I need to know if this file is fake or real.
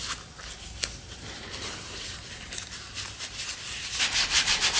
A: fake